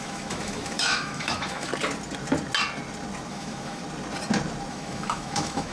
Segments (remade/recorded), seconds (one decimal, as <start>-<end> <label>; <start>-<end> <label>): 0.0-1.7 remade; 1.7-3.3 recorded; 3.3-3.8 remade; 3.8-4.7 recorded; 4.7-5.7 remade